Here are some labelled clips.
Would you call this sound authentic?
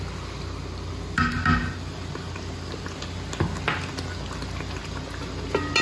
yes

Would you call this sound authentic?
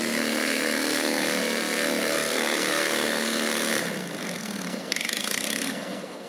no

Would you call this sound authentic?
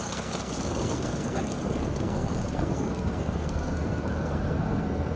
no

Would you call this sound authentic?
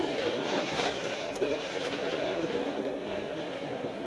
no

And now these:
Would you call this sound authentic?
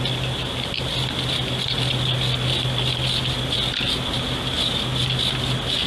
yes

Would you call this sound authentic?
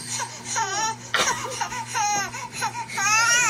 yes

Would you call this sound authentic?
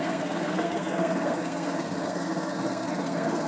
no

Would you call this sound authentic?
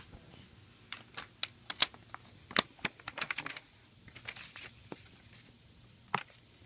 yes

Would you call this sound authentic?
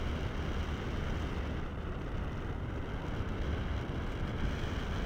yes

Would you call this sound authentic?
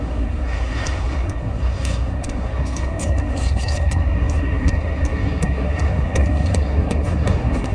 no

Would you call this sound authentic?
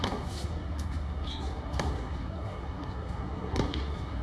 no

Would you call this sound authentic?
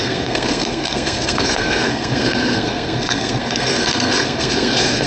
no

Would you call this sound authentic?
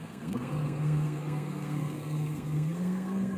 no